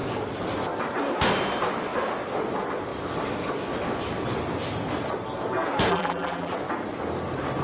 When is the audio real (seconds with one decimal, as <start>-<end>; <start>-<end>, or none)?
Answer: 0.0-5.9; 6.5-7.6